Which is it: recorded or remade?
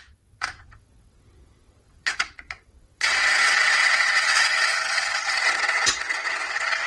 remade